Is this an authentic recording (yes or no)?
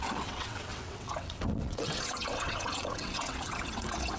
no